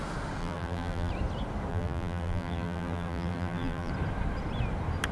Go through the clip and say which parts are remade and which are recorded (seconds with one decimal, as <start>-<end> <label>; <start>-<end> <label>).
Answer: 0.0-0.4 recorded; 0.4-1.1 remade; 1.1-1.7 recorded; 1.7-3.9 remade; 3.9-5.1 recorded